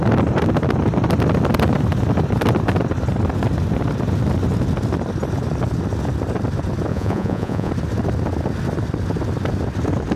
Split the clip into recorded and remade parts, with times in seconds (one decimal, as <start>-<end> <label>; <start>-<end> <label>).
0.0-6.9 recorded; 6.9-7.7 remade; 7.7-10.2 recorded